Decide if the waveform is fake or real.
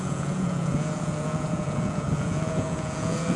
fake